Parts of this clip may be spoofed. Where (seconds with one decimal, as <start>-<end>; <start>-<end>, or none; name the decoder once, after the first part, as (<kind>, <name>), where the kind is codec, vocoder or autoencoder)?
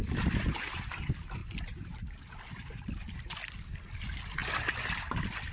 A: none